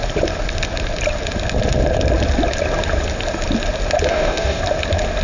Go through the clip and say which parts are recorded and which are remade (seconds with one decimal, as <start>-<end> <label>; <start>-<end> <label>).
0.0-4.1 recorded; 4.1-4.6 remade; 4.6-5.2 recorded